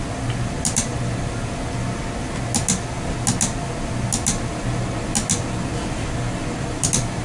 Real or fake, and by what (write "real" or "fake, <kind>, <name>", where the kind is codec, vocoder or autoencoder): real